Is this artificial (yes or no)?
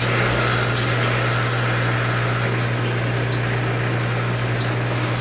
no